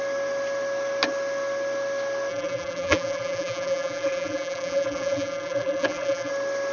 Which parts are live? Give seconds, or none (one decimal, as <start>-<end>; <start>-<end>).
0.0-2.3; 6.3-6.7